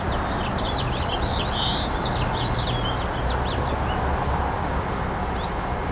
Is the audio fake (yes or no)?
no